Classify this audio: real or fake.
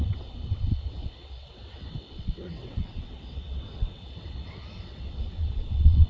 fake